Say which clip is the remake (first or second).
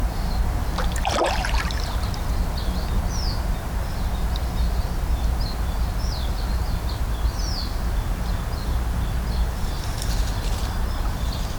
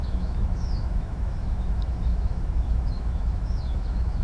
second